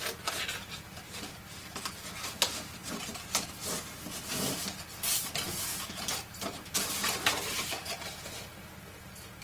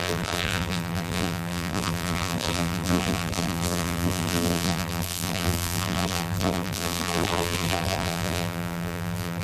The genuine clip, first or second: first